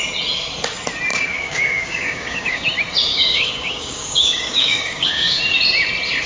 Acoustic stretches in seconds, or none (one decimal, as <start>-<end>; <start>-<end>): 0.0-1.1; 2.6-3.1; 5.4-6.3